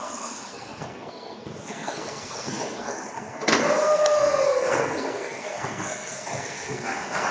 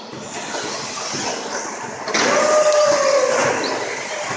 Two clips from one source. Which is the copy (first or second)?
first